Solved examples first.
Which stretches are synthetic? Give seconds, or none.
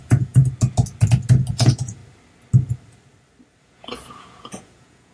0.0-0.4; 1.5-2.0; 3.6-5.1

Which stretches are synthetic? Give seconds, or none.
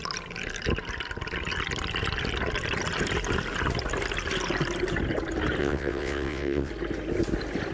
5.6-6.7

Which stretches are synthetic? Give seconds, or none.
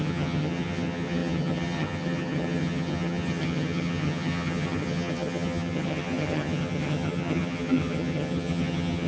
0.0-9.1